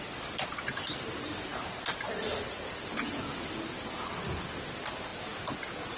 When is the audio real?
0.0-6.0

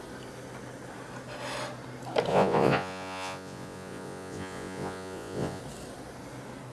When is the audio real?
0.0-2.3; 5.6-6.7

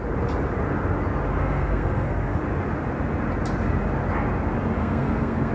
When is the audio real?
0.0-1.4; 2.4-4.8

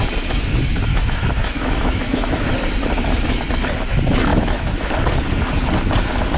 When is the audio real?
0.0-0.9; 2.5-4.3; 4.9-6.4

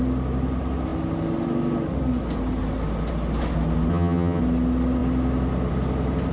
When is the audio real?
0.0-3.9; 4.4-6.3

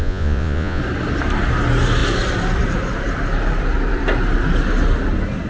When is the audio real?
0.8-5.5